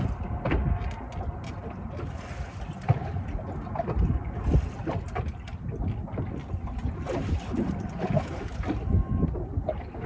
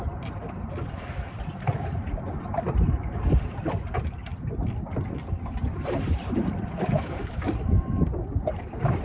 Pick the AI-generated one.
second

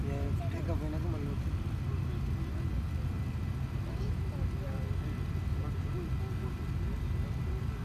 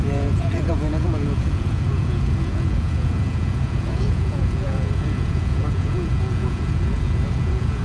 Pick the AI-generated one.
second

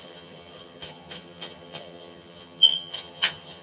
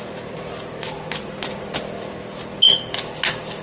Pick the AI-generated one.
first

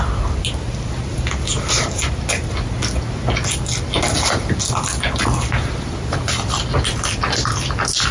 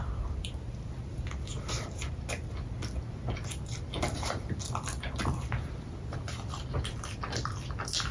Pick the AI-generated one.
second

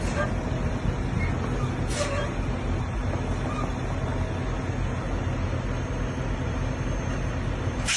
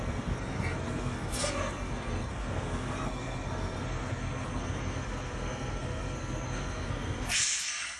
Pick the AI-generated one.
second